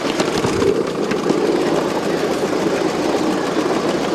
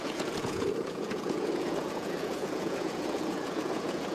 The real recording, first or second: first